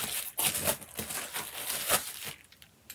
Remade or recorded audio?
recorded